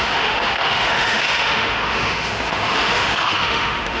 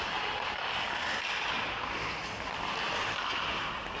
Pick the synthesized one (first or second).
first